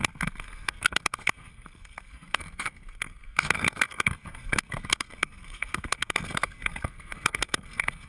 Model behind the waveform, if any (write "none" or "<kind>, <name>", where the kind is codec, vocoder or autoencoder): codec, SNAC